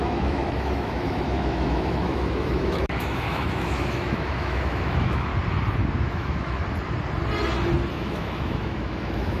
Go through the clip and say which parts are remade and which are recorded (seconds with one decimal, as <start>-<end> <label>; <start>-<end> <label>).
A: 0.0-5.3 remade; 5.3-6.1 recorded; 6.1-6.6 remade; 6.6-7.9 recorded; 7.9-9.4 remade